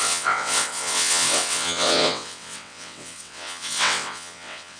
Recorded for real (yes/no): no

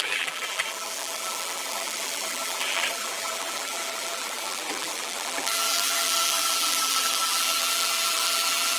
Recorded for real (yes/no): no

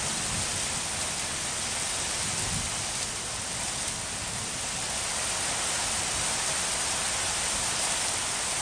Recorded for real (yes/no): yes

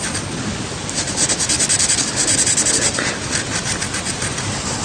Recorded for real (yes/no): yes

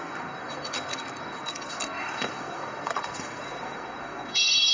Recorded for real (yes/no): no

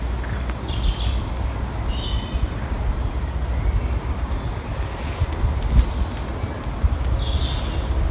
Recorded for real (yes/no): yes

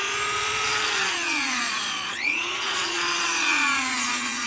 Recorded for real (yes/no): no